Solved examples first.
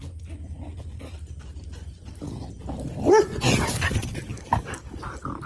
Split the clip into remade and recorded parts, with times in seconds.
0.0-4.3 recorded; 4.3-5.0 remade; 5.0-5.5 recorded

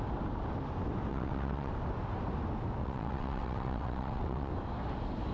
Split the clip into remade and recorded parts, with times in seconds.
0.0-1.1 recorded; 1.1-1.7 remade; 1.7-2.8 recorded; 2.8-4.5 remade; 4.5-5.3 recorded